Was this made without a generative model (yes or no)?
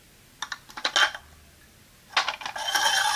yes